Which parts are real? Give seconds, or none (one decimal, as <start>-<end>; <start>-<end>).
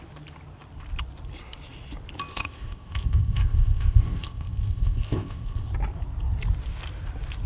0.0-2.3; 5.7-7.5